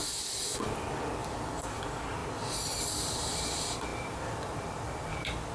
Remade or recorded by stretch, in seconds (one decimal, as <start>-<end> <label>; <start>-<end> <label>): 0.0-1.2 recorded; 1.2-1.8 remade; 1.8-5.5 recorded